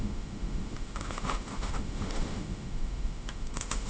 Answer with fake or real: fake